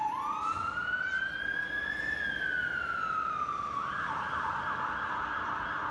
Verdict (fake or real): real